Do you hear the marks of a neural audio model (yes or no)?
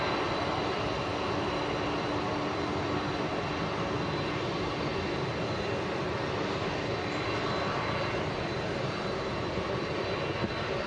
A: no